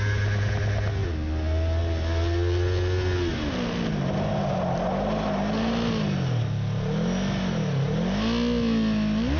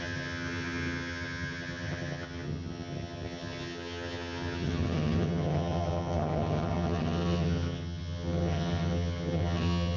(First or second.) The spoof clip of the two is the second